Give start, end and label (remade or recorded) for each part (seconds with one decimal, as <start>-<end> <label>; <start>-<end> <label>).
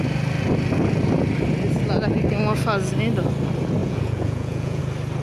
0.0-3.8 recorded; 3.8-4.8 remade; 4.8-5.2 recorded